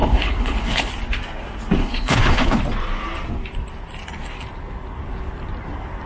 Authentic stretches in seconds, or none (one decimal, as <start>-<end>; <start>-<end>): 0.9-1.8; 2.6-6.1